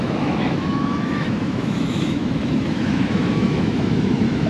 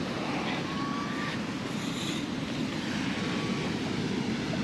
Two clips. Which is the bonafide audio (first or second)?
second